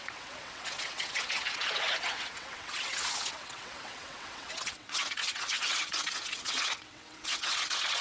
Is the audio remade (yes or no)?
yes